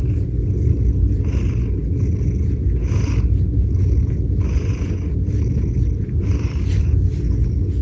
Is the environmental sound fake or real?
real